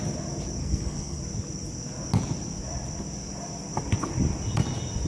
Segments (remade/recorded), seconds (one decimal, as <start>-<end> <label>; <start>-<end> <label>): 0.0-0.6 recorded; 0.6-1.2 remade; 1.2-5.1 recorded

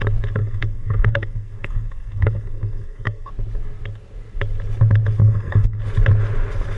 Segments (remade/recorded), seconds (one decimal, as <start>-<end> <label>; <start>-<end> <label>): 0.0-0.4 recorded; 0.4-3.3 remade; 3.3-5.2 recorded; 5.2-5.8 remade; 5.8-6.8 recorded

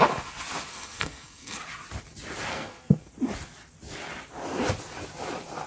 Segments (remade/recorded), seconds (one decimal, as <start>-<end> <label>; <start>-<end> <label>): 0.0-0.7 recorded; 0.7-1.6 remade; 1.6-2.5 recorded; 2.5-3.1 remade; 3.1-5.7 recorded